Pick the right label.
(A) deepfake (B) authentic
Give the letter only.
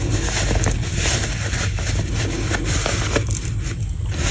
B